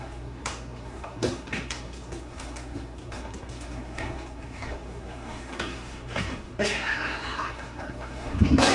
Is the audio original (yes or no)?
no